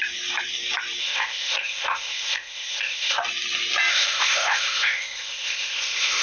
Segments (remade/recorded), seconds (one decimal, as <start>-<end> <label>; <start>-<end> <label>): 0.0-1.0 recorded; 1.0-3.2 remade; 3.2-3.9 recorded; 3.9-6.2 remade